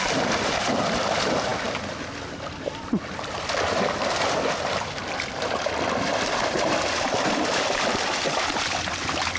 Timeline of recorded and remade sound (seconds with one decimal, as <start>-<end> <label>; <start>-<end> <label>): 0.0-9.4 remade